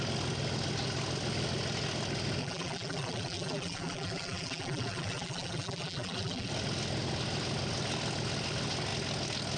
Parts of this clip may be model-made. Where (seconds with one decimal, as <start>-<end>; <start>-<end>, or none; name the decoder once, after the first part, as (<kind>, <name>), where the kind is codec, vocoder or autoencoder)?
2.4-6.5 (vocoder, BigVGAN v2)